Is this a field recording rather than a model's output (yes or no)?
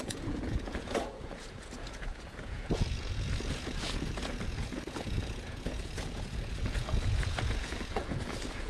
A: no